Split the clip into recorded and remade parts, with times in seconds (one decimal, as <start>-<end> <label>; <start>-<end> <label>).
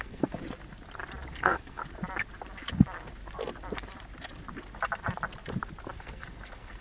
0.0-0.4 remade; 0.4-1.3 recorded; 1.3-1.8 remade; 1.8-5.9 recorded; 5.9-6.8 remade